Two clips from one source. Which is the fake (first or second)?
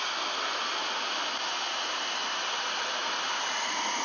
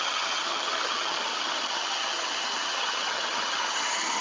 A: second